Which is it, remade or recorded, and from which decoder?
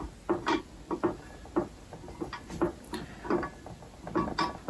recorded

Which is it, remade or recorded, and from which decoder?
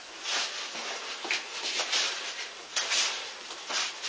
recorded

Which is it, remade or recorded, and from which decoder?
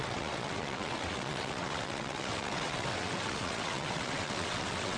remade, vocoder, WaveNeXt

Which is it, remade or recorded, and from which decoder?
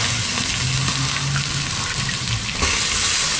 recorded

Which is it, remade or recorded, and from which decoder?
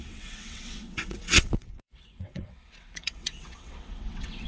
remade, vocoder, WaveNeXt